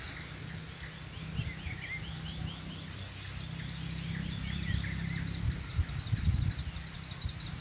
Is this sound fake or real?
real